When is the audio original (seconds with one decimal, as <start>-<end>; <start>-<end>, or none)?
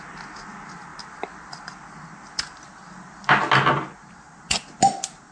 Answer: 0.0-5.3